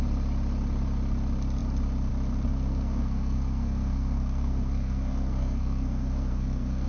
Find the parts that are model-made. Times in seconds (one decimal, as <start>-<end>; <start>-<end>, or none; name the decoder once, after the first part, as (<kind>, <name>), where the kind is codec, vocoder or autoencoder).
2.5-6.9 (codec, SNAC)